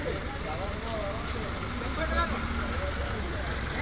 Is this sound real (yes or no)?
yes